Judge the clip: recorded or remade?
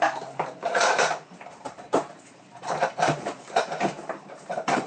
remade